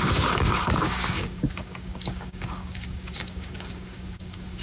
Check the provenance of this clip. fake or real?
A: fake